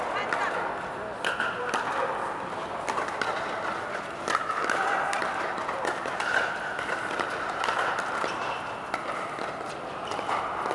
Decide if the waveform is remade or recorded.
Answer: recorded